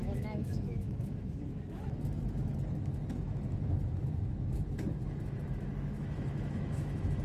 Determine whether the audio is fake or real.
fake